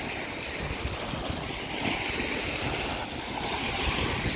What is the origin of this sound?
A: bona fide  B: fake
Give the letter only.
A